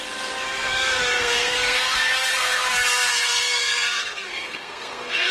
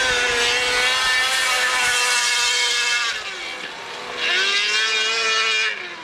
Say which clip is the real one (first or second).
second